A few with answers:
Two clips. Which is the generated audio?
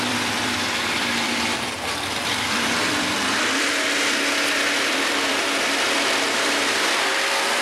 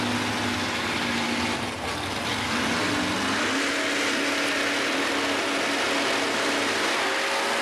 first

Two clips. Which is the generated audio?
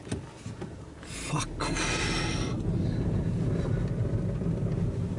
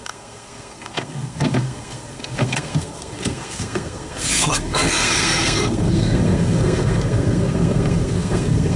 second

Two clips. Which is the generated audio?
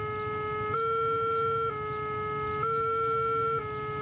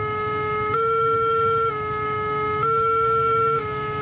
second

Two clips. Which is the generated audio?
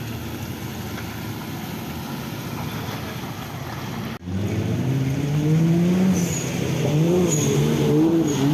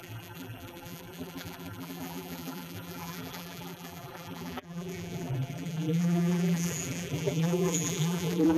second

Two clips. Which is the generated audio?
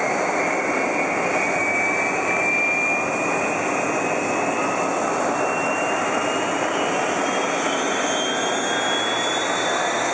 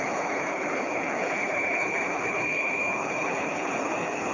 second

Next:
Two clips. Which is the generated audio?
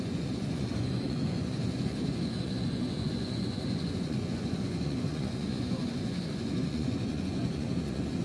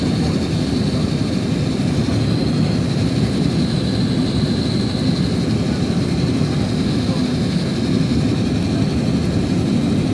first